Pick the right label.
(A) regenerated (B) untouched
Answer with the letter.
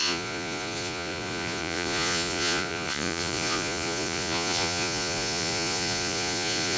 A